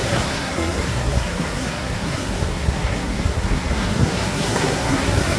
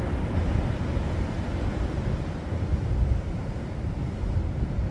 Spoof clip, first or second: first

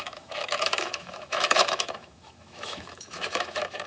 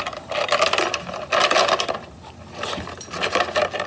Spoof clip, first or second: first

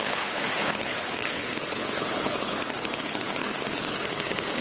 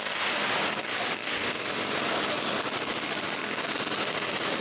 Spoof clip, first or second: first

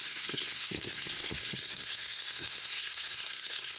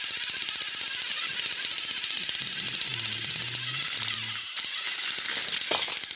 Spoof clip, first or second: first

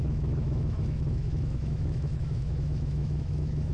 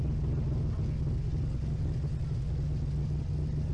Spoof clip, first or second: first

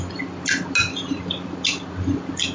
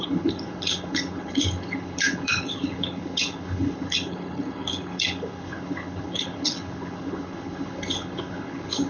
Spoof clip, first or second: second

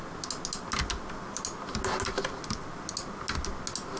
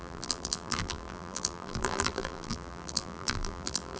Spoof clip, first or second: second